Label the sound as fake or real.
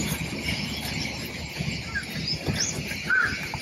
real